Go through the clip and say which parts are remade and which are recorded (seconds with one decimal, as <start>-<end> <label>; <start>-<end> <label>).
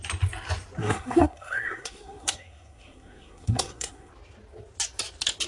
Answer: 0.0-0.8 recorded; 0.8-4.1 remade; 4.1-5.5 recorded